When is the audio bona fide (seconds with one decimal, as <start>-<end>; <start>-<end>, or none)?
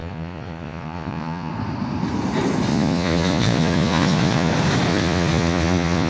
1.5-2.7; 4.5-4.9